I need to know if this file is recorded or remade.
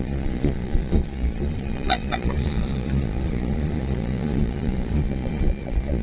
remade